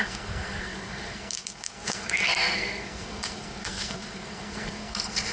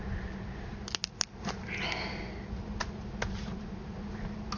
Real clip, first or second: second